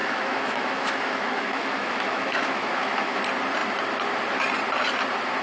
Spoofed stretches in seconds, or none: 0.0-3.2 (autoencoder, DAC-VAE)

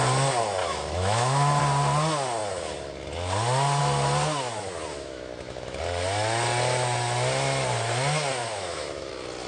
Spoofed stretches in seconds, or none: 0.6-1.6 (autoencoder, DAC-VAE); 4.9-5.8; 8.4-9.1

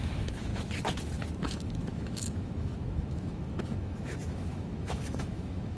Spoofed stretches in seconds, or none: 0.0-0.5 (autoencoder, DAC-VAE); 1.4-5.8

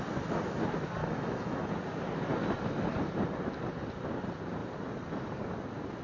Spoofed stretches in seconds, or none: 1.0-1.7 (autoencoder, DAC-VAE)

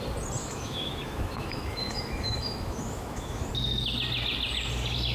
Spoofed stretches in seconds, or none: 0.4-3.5 (autoencoder, DAC-VAE)

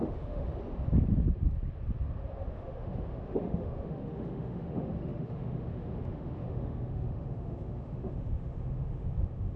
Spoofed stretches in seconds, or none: 0.0-0.5 (autoencoder, DAC-VAE); 2.5-9.6